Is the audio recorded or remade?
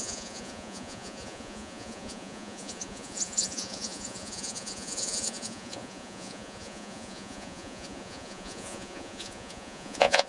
remade